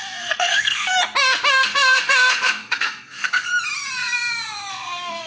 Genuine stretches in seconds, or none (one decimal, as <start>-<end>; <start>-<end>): 0.9-1.5; 3.5-4.7